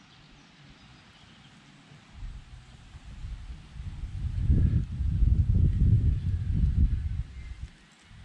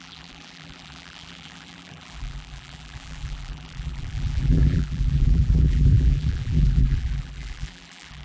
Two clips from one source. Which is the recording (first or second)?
first